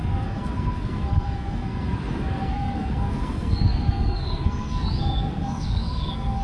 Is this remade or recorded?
remade